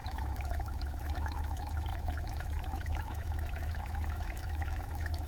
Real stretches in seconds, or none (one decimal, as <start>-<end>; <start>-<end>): none